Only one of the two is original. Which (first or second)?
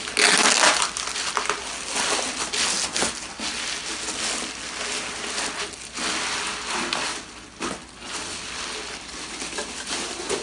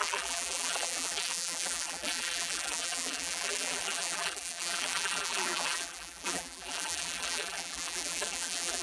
first